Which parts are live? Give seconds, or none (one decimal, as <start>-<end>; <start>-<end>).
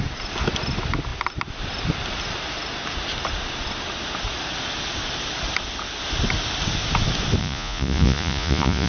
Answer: 0.0-7.4